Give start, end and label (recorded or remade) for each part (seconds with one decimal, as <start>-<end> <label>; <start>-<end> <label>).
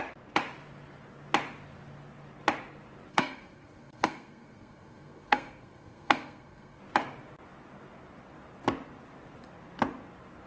0.0-3.1 recorded; 3.1-6.8 remade; 6.8-10.5 recorded